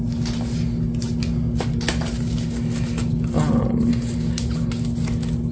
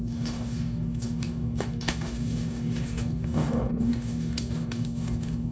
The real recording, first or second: first